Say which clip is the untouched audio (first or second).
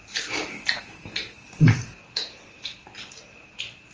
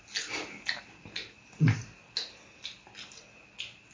second